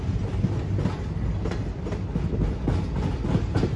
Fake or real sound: real